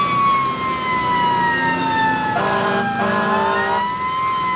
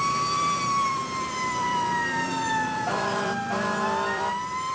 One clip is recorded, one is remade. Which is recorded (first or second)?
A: first